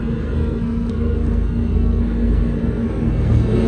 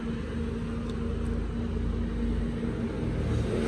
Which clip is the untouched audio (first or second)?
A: second